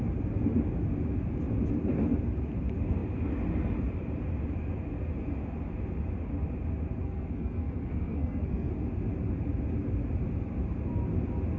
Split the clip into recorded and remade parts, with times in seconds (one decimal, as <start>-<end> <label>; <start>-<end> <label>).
0.0-7.0 recorded; 7.0-8.7 remade; 8.7-11.6 recorded